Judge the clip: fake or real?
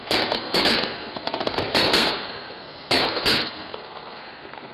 fake